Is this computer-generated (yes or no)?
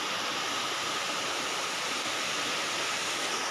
no